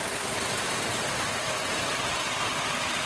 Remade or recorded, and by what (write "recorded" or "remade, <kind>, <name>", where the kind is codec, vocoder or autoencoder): recorded